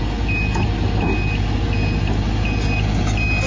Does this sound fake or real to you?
real